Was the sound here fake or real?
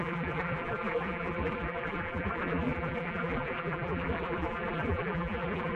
fake